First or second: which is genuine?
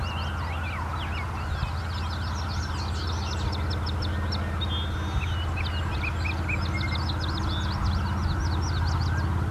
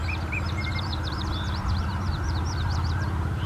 first